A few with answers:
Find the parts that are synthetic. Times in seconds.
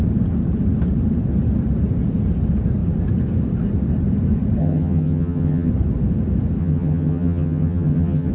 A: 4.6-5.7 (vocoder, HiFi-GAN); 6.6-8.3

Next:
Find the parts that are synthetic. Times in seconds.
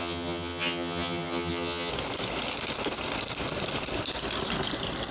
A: 0.0-1.9 (vocoder, HiFi-GAN)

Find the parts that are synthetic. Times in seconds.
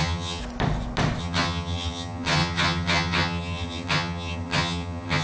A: 0.0-0.4 (vocoder, HiFi-GAN); 1.2-5.2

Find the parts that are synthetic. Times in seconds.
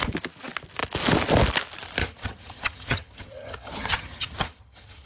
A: 2.0-5.1 (vocoder, HiFi-GAN)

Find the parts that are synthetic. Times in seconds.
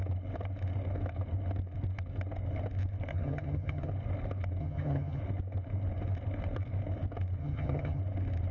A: 3.1-3.9 (vocoder, HiFi-GAN); 4.6-5.2; 7.4-8.0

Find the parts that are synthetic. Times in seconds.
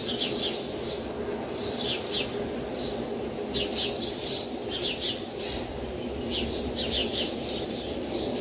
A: none